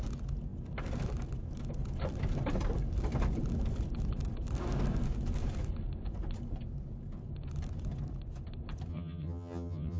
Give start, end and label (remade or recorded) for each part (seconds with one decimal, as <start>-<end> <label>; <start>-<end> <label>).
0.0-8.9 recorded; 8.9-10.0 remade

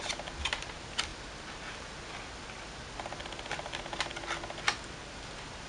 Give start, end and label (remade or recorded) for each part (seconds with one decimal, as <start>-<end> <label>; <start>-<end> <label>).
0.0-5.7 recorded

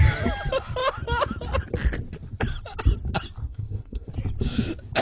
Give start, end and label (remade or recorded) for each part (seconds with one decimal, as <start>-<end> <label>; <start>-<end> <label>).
0.0-3.4 recorded; 3.4-4.1 remade; 4.1-5.0 recorded

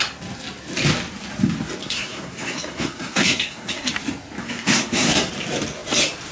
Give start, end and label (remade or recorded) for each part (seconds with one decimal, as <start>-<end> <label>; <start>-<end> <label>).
0.0-1.8 recorded; 1.8-3.9 remade; 3.9-4.4 recorded; 4.4-5.3 remade; 5.3-6.3 recorded